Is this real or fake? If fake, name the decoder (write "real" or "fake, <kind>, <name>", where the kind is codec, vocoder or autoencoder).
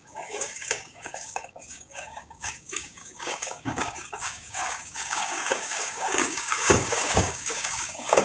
fake, codec, DAC